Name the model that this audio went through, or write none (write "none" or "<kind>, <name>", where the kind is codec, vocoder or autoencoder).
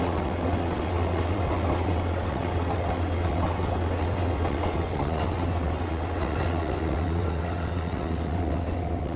vocoder, WaveNeXt